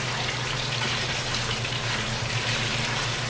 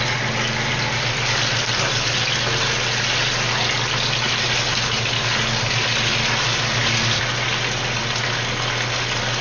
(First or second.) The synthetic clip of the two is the first